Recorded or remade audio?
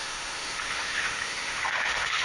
remade